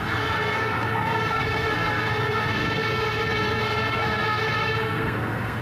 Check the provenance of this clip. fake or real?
fake